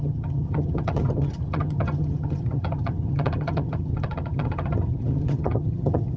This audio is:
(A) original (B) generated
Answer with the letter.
B